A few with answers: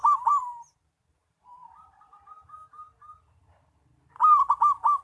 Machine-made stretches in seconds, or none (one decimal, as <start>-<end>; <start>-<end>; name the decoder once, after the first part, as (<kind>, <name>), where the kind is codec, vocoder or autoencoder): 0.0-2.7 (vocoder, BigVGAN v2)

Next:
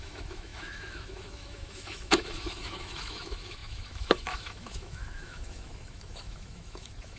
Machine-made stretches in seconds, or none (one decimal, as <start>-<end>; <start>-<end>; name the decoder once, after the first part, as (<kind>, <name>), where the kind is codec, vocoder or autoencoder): 0.0-7.2 (autoencoder, DAC-VAE)

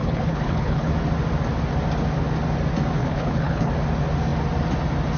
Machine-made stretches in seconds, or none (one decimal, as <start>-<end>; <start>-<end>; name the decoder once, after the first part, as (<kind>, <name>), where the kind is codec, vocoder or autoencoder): 0.0-0.9 (codec, HILCodec); 3.0-3.7

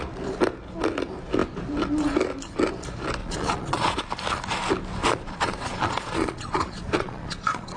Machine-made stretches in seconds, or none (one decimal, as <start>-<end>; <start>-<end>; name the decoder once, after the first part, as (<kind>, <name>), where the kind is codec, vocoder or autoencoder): 3.2-4.0 (vocoder, Vocos); 5.0-7.8

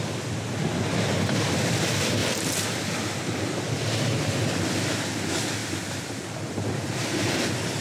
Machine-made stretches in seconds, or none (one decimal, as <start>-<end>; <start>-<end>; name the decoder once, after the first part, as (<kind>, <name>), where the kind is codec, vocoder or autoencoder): none

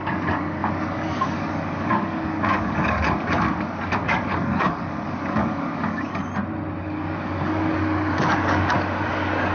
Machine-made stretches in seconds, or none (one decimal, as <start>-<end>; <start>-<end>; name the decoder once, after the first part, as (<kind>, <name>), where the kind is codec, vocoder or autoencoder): 0.0-6.2 (codec, DAC); 6.8-9.5

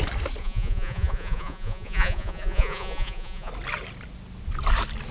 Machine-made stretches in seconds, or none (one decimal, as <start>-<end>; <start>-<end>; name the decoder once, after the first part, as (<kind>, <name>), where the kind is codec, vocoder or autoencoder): 0.4-3.5 (vocoder, Vocos)